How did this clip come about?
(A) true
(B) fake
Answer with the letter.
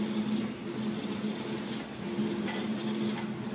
A